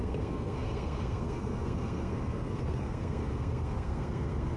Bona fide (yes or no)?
no